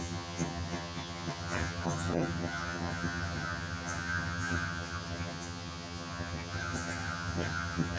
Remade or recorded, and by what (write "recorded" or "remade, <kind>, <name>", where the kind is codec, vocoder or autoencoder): remade, vocoder, HiFi-GAN